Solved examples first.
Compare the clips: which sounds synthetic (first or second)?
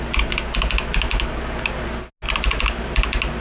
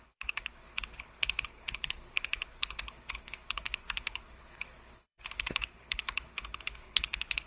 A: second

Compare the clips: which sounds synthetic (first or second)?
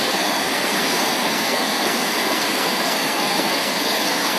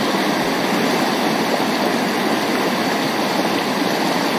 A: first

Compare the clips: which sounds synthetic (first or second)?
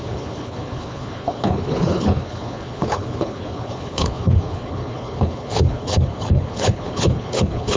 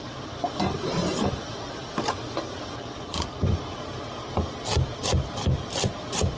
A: first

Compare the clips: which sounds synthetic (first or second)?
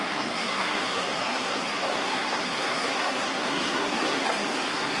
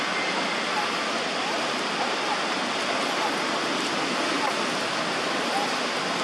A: first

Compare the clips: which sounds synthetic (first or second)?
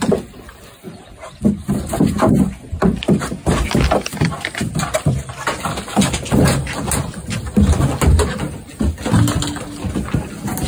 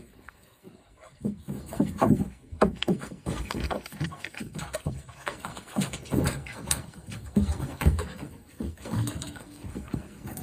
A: second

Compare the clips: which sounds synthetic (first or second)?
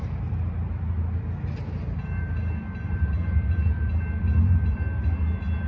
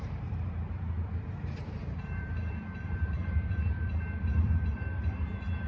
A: second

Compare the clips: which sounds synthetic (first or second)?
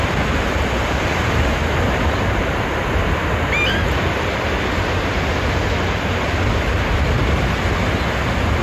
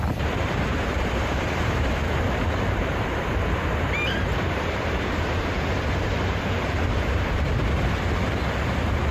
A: second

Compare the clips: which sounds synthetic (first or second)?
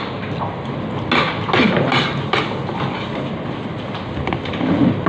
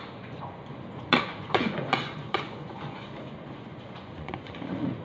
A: second